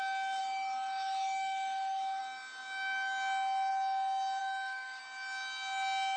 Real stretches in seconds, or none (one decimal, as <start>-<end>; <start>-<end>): 0.0-0.4; 2.2-4.4; 5.0-6.2